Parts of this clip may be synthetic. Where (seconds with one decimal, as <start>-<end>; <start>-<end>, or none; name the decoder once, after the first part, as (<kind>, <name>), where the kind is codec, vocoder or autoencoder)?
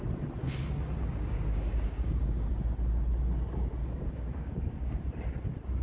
0.4-2.5 (codec, DAC); 3.8-5.1